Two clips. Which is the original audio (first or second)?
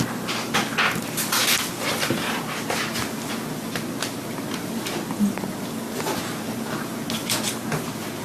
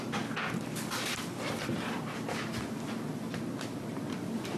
first